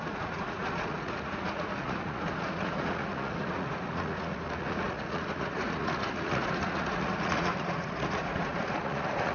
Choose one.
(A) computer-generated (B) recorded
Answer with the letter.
A